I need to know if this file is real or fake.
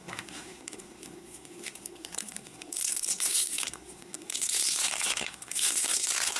fake